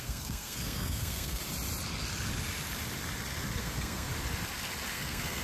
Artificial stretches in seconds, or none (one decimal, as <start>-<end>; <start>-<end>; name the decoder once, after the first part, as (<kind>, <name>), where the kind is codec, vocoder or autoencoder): 0.0-1.4 (codec, SNAC); 3.6-4.1; 4.9-5.4